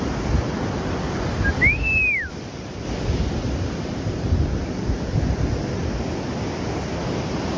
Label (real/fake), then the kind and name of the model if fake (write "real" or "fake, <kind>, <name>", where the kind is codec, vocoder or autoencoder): real